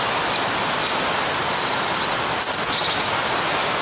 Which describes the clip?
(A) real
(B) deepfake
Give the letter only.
A